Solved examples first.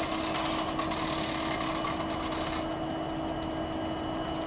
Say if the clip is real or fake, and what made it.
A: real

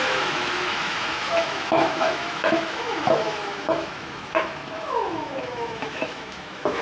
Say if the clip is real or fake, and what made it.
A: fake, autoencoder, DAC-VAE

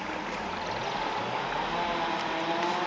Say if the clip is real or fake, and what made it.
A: real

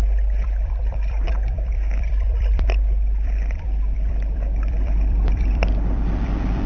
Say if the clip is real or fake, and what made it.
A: fake, vocoder, BigVGAN v2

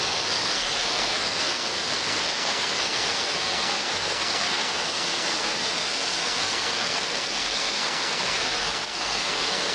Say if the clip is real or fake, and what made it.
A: fake, codec, SNAC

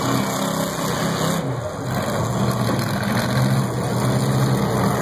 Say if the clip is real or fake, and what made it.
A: real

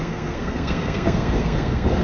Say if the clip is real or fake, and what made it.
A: fake, codec, SNAC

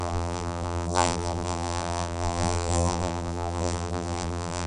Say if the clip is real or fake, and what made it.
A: fake, vocoder, BigVGAN v2